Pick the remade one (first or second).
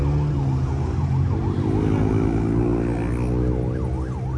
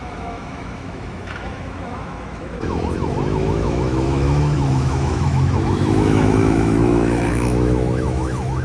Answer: second